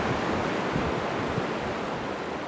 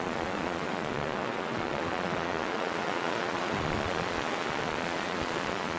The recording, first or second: first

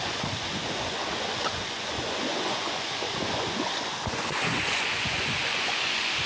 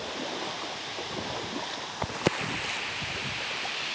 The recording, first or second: second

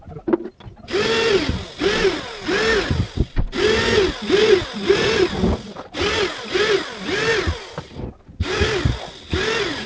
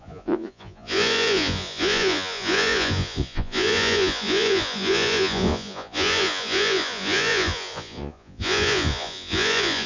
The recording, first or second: first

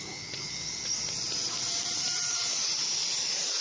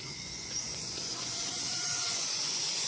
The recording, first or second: first